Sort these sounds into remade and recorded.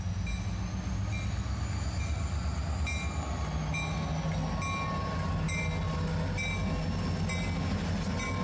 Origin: recorded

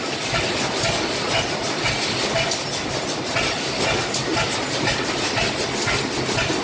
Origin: recorded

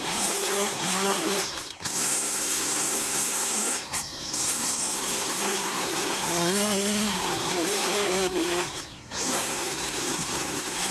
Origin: remade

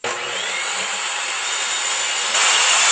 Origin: recorded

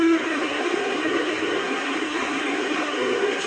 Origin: remade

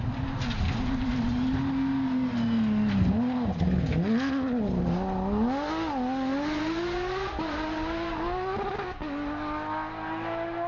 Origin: recorded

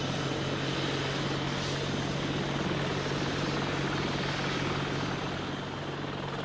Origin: recorded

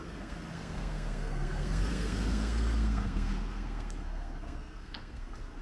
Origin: remade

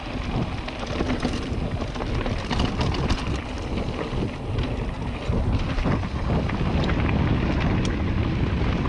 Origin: recorded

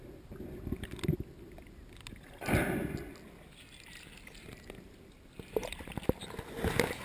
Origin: recorded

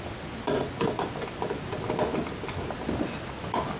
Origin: recorded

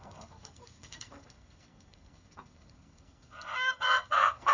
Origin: remade